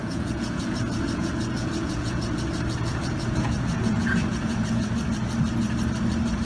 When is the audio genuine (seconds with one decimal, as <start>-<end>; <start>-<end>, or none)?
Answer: 2.4-2.9; 4.9-6.4